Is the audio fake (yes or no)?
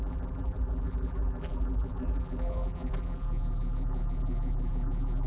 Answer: yes